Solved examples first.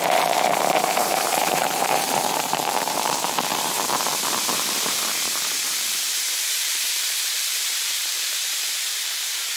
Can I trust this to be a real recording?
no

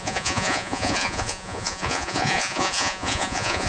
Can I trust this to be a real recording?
no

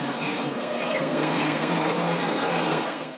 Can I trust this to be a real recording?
no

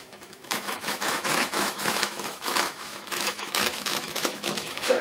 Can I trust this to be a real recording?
no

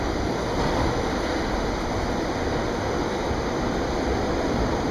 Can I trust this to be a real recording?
yes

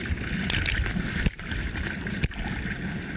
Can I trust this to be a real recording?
yes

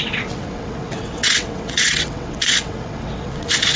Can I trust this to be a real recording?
no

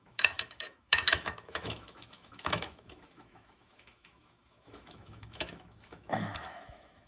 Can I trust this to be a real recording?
no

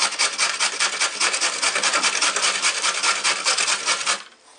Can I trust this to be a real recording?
yes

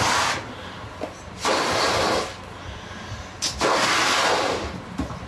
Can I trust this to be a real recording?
yes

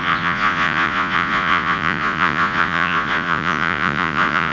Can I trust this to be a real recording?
no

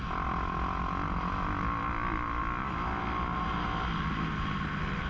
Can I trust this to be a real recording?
yes